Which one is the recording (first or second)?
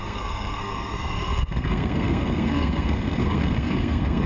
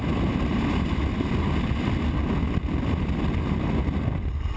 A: second